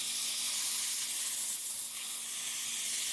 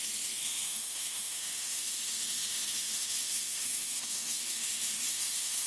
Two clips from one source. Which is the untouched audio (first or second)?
first